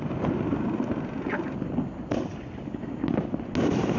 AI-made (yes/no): no